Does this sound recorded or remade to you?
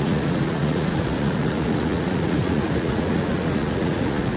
remade